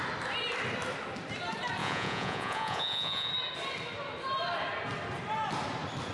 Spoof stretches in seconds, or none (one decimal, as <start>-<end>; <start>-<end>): 1.8-3.3